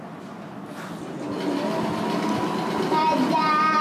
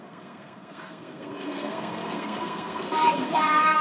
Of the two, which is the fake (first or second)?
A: second